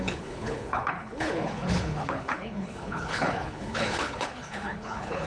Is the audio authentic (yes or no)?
no